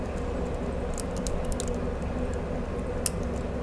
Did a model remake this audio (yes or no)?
no